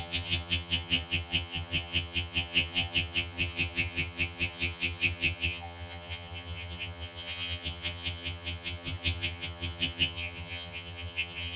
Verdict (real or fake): fake